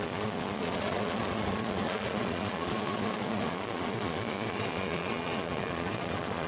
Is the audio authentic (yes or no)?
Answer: no